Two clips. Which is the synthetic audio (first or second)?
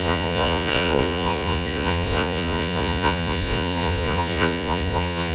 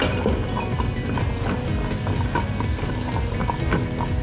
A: first